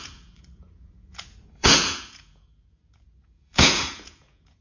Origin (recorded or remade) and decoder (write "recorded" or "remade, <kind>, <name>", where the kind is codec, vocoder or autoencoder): remade, vocoder, Vocos